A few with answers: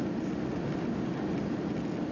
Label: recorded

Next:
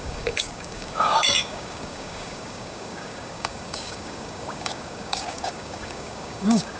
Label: remade